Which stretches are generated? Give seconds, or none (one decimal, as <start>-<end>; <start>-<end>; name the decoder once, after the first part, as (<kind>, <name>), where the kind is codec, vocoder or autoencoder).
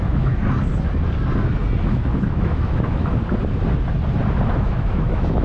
0.0-0.4 (autoencoder, DAC-VAE); 1.9-3.2; 4.5-5.4